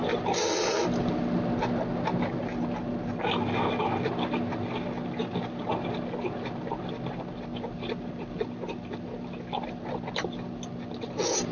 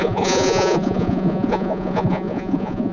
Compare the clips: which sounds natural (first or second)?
first